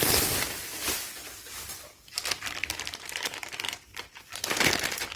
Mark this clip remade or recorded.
recorded